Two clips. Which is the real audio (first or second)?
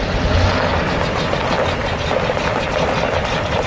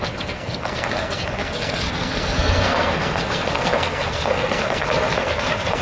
first